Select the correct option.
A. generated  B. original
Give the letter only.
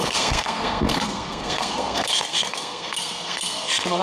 A